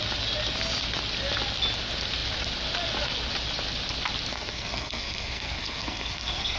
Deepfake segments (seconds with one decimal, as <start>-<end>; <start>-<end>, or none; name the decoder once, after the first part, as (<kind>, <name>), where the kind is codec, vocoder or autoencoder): 4.3-6.6 (codec, SNAC)